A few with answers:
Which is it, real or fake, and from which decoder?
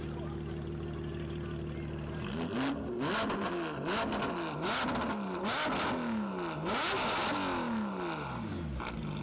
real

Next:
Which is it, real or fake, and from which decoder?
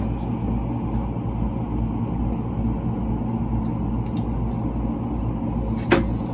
real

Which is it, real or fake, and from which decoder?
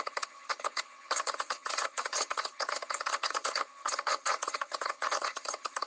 fake, vocoder, HiFi-GAN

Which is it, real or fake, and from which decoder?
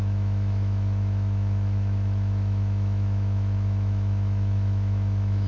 fake, autoencoder, DAC-VAE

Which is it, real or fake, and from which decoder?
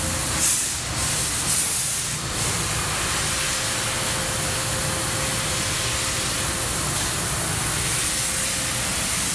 real